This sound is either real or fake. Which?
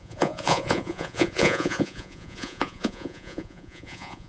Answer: fake